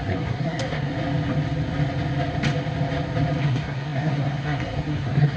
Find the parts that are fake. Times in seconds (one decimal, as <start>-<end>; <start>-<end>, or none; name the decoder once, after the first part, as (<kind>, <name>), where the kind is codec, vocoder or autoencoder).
0.0-0.9 (codec, SNAC); 3.4-5.4